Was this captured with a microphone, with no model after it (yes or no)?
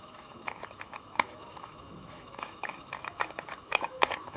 no